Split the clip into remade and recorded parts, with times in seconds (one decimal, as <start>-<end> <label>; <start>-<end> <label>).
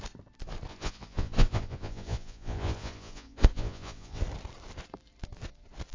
0.0-0.7 recorded; 0.7-4.2 remade; 4.2-5.9 recorded